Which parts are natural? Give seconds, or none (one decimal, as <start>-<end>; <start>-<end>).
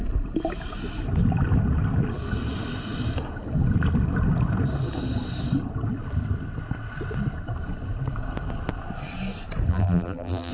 0.0-9.7